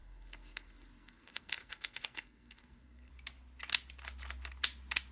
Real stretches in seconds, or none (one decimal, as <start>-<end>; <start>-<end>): 3.1-5.1